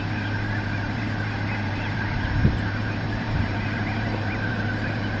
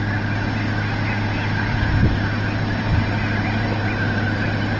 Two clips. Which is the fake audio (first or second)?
first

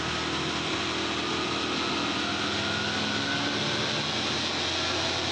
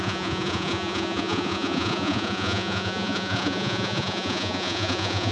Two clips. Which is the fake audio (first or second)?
second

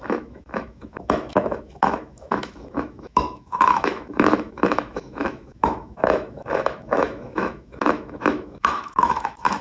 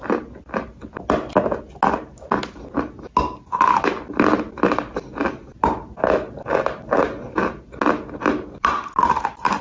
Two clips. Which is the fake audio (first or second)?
first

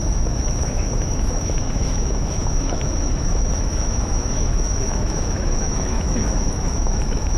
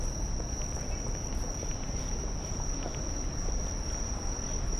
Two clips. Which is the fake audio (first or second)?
first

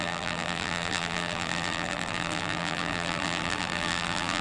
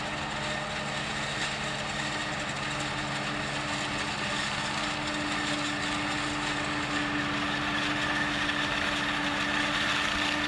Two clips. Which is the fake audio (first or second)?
first